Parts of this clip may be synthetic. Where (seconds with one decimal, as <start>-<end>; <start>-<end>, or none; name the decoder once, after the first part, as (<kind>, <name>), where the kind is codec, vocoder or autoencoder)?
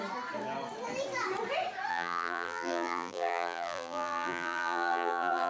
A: 1.9-5.5 (vocoder, BigVGAN v2)